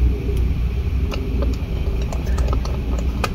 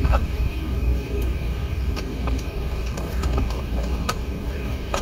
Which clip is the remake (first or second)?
second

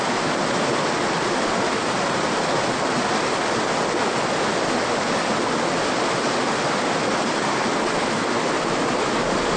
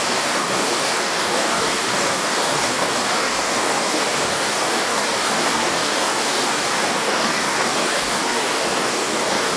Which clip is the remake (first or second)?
second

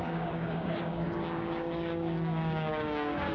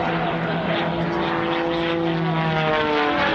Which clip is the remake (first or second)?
first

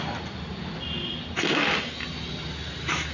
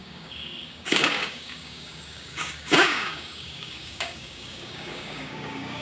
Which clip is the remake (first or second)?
second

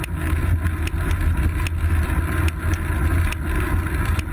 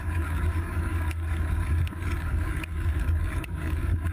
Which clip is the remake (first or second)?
second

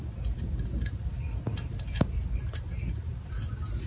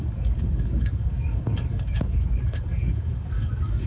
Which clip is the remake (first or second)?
second